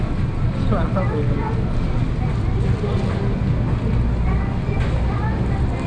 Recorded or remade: recorded